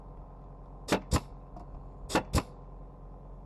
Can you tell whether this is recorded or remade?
recorded